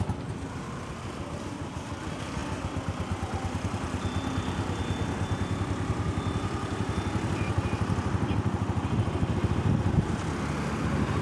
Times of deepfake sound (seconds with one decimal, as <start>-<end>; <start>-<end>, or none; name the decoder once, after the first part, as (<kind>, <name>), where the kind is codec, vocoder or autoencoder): 2.4-7.6 (vocoder, BigVGAN v2)